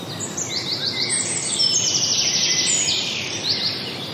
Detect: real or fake real